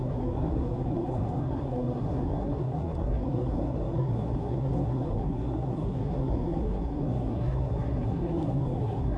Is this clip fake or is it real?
fake